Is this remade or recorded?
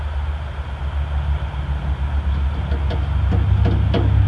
recorded